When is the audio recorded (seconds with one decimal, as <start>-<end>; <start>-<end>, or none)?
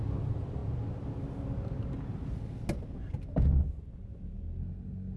0.0-4.6